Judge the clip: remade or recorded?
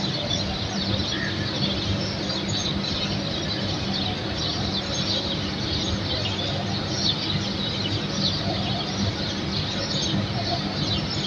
recorded